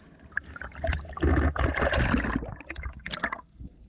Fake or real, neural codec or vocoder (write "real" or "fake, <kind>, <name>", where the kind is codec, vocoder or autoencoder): real